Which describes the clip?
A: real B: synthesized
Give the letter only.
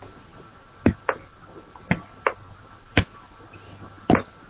A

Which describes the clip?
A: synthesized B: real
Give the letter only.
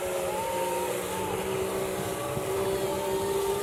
B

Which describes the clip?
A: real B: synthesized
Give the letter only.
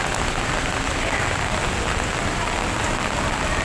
A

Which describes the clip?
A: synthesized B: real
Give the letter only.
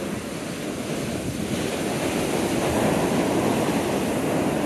B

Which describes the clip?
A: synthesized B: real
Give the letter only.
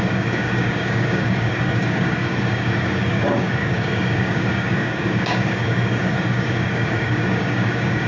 A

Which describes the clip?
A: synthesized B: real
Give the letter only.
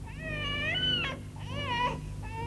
B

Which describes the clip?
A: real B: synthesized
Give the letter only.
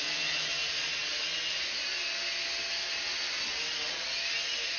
A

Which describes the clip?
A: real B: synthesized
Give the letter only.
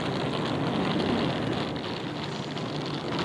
A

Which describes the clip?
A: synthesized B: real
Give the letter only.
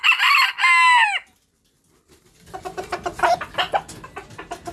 B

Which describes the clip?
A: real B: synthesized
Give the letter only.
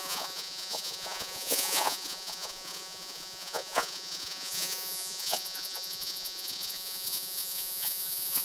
B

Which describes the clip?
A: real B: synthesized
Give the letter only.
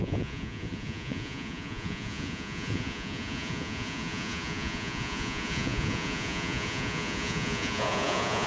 B